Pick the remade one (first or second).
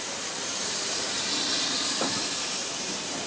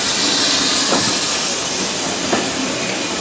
first